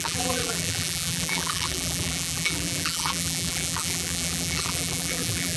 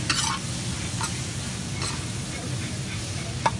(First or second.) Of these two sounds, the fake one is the first